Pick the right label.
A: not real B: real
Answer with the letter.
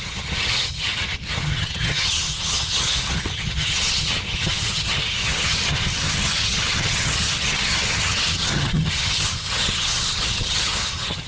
A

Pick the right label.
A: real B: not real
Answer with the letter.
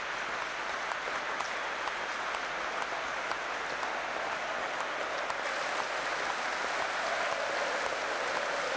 A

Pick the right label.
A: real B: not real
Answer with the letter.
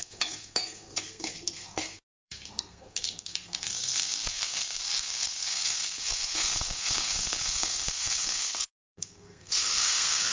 B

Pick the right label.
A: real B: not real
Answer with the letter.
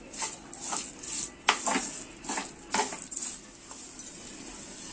A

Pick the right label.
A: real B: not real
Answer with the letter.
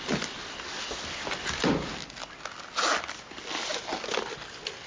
A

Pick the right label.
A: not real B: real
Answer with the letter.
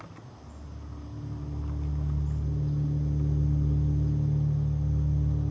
B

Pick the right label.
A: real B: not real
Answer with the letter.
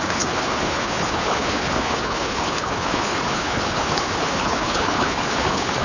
B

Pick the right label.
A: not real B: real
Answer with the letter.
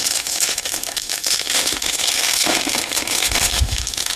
A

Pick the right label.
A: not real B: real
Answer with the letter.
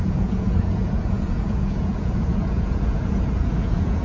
A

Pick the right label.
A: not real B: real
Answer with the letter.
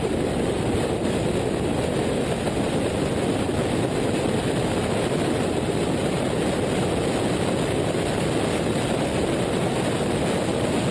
B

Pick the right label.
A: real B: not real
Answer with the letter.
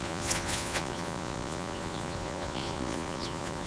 B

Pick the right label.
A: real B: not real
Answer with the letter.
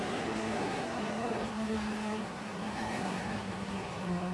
B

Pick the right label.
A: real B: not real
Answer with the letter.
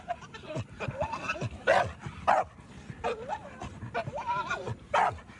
A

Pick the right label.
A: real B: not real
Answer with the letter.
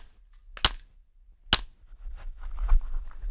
A